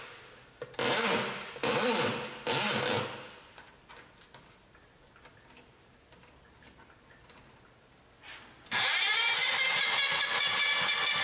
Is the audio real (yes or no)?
yes